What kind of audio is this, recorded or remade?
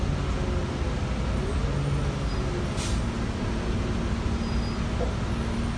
recorded